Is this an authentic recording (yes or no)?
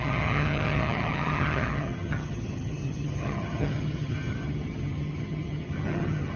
no